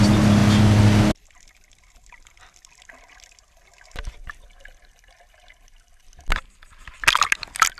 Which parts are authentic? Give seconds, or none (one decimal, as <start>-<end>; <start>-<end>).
0.0-7.8